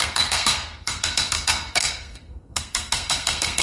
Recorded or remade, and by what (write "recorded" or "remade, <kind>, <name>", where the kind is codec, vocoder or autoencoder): remade, codec, SNAC